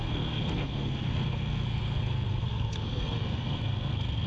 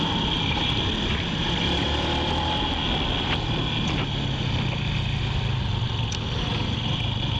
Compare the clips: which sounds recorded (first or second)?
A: second